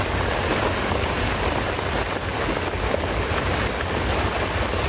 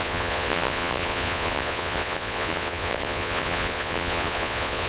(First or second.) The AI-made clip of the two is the second